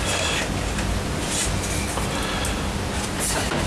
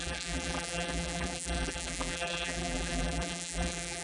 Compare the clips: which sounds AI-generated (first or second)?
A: second